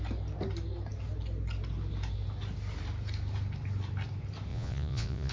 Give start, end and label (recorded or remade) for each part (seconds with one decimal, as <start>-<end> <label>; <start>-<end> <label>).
0.0-4.5 recorded; 4.5-5.3 remade